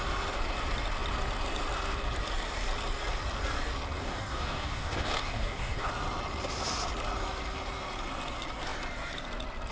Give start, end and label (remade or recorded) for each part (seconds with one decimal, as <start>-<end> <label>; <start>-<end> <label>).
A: 0.0-4.0 recorded; 4.0-5.9 remade; 5.9-9.7 recorded

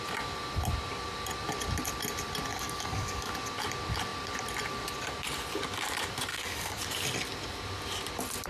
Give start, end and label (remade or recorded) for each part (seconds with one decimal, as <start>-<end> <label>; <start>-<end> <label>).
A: 0.0-2.5 recorded; 2.5-3.3 remade; 3.3-6.3 recorded; 6.3-6.8 remade; 6.8-8.5 recorded

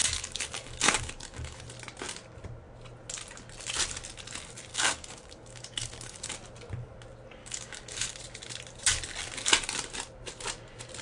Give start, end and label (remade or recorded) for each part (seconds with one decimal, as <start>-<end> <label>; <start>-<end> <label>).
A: 0.0-1.6 remade; 1.6-4.7 recorded; 4.7-6.3 remade; 6.3-7.4 recorded; 7.4-8.2 remade; 8.2-11.0 recorded

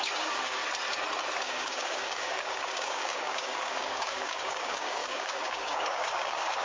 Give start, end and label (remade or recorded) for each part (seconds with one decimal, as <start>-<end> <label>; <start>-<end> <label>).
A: 0.0-0.6 remade; 0.6-1.4 recorded; 1.4-6.6 remade

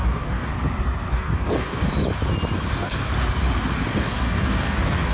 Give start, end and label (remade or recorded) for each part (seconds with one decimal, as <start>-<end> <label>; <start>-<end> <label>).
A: 0.0-0.5 remade; 0.5-1.1 recorded; 1.1-1.9 remade; 1.9-2.7 recorded; 2.7-3.1 remade; 3.1-4.0 recorded; 4.0-5.1 remade

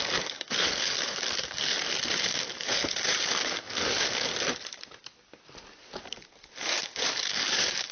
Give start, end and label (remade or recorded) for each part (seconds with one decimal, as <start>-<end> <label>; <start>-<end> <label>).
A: 0.0-1.7 remade; 1.7-2.2 recorded; 2.2-4.3 remade; 4.3-6.0 recorded; 6.0-7.9 remade

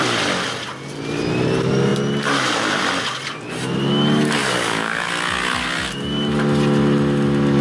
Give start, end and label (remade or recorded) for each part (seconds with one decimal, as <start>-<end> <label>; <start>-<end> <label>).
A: 0.0-4.4 recorded; 4.4-5.1 remade; 5.1-7.6 recorded